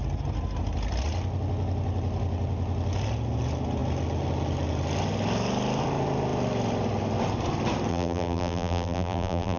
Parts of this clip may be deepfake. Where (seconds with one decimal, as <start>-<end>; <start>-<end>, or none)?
7.9-9.6